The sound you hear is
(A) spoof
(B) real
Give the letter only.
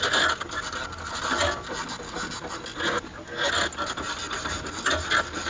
B